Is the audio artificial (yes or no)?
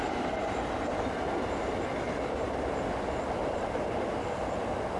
no